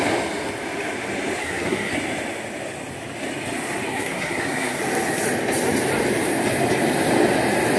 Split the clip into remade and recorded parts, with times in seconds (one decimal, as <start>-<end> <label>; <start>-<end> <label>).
0.0-1.4 recorded; 1.4-1.9 remade; 1.9-3.9 recorded; 3.9-4.8 remade; 4.8-7.8 recorded